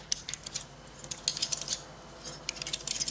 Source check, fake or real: real